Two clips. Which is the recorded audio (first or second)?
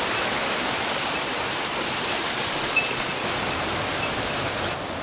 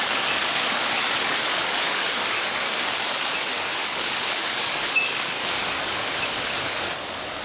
first